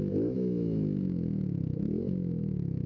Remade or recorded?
remade